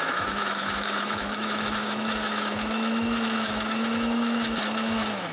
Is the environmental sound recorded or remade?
remade